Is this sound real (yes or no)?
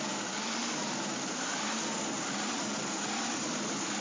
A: no